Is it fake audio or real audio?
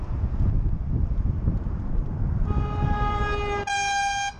real